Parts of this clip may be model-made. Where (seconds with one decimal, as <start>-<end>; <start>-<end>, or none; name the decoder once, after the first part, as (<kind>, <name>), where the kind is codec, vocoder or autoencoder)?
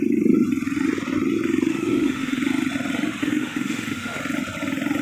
1.7-2.4 (autoencoder, DAC-VAE); 3.2-4.2